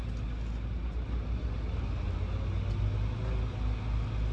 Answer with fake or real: real